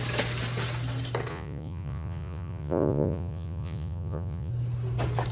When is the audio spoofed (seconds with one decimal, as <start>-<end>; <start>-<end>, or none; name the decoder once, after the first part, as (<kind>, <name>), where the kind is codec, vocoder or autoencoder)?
1.3-4.5 (vocoder, Vocos)